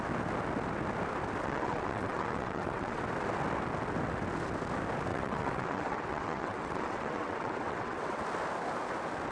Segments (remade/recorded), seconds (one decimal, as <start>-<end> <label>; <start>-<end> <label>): 0.0-1.4 recorded; 1.4-3.0 remade; 3.0-5.1 recorded; 5.1-8.2 remade; 8.2-9.3 recorded